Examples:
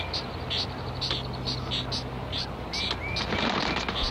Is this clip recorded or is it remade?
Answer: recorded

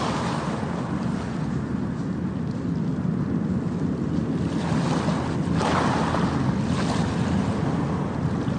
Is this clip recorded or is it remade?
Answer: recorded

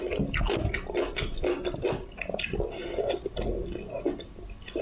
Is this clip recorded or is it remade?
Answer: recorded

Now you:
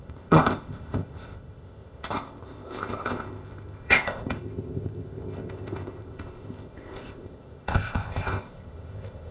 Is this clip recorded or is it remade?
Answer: remade